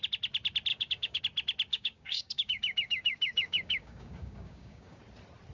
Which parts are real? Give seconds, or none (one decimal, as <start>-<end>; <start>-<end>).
0.0-0.7; 1.2-1.7; 5.0-5.5